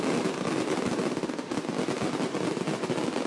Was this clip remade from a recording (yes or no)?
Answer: no